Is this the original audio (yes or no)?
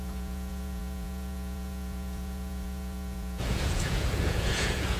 no